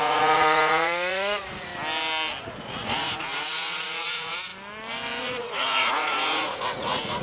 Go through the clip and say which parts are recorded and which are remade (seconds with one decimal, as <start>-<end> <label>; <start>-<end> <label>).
0.0-1.7 remade; 1.7-2.4 recorded; 2.4-4.5 remade; 4.5-5.2 recorded; 5.2-7.2 remade